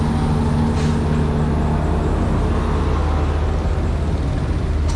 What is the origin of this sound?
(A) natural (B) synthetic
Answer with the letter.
A